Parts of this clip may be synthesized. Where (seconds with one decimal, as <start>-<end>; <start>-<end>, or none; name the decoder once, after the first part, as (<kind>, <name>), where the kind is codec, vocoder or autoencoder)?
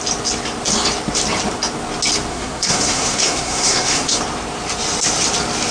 2.3-4.2 (codec, SNAC)